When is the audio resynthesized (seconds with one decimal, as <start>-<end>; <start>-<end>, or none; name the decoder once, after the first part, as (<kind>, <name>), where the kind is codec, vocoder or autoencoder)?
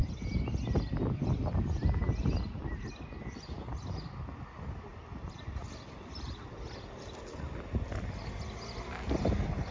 none